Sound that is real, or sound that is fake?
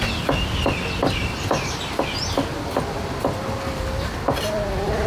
real